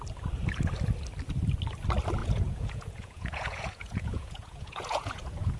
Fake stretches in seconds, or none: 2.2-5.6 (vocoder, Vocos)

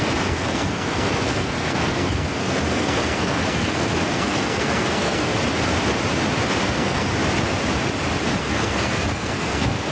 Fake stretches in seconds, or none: 0.0-5.3 (codec, SNAC); 6.6-7.1; 8.4-9.9